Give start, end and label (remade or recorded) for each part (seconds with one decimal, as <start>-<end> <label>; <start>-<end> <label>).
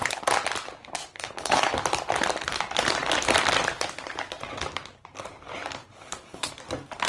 0.0-1.0 recorded; 1.0-1.7 remade; 1.7-5.8 recorded; 5.8-6.5 remade; 6.5-7.1 recorded